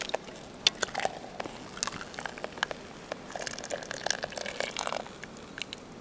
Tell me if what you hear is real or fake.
real